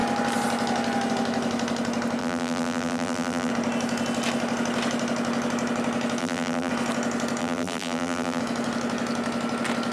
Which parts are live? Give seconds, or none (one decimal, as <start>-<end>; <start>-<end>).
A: 0.0-2.2; 3.5-6.2; 6.7-7.4; 8.4-9.9

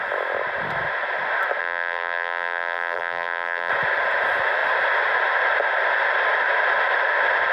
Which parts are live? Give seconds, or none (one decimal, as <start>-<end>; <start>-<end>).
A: 0.0-1.6; 3.7-7.5

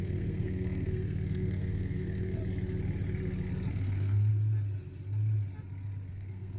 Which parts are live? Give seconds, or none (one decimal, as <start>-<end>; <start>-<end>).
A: 2.4-3.7; 4.3-6.1

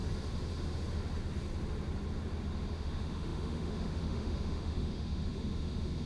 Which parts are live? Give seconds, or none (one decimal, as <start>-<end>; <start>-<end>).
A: 0.0-2.7

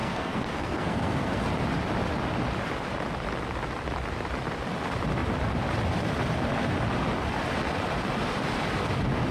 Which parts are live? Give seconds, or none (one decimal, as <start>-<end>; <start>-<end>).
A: 1.4-9.3

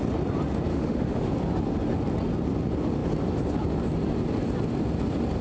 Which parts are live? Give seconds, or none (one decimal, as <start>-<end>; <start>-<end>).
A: 0.0-0.7; 1.3-5.4

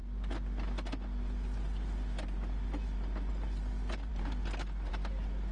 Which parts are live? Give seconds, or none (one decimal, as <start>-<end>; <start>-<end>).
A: 0.0-5.5

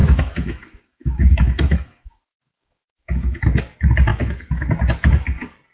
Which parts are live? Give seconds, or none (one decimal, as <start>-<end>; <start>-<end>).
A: 3.4-4.1; 4.7-5.7